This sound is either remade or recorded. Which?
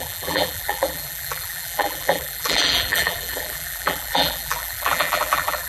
remade